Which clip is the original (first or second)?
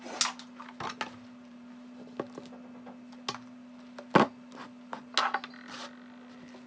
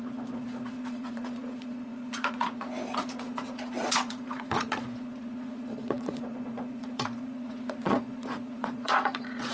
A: first